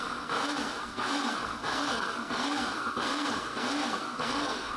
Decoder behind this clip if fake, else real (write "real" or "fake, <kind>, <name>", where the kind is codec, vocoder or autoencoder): fake, codec, SNAC